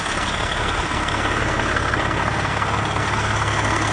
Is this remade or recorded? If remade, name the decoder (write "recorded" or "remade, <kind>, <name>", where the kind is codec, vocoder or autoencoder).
remade, codec, SNAC